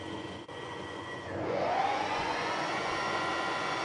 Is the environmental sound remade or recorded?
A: remade